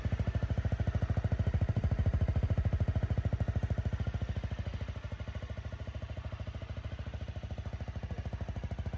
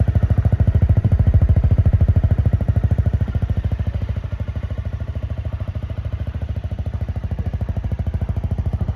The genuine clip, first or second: first